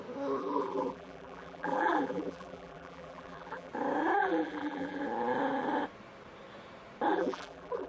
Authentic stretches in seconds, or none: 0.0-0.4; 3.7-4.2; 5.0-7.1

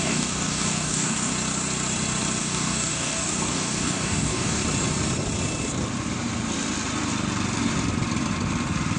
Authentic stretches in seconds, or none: 1.3-2.4; 4.6-9.0

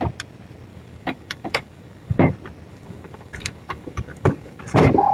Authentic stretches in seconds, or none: 0.0-0.7; 2.3-2.7; 4.6-5.1

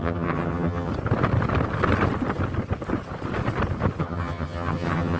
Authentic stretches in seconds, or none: 0.9-4.0

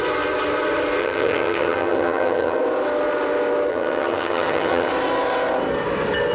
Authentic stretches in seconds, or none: 0.0-1.0; 2.6-3.7; 4.9-6.3

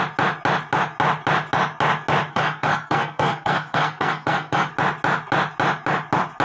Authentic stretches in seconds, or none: 0.0-2.3; 4.7-6.4

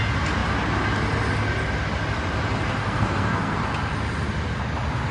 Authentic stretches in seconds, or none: 0.0-2.8; 3.6-5.1

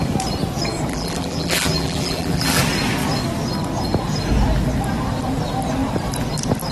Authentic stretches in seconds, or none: 0.0-0.9; 2.6-6.7